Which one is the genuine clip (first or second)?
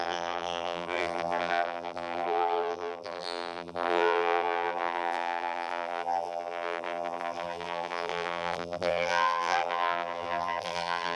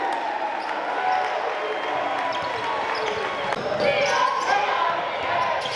second